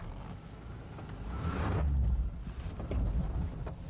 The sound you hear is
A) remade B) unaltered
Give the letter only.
B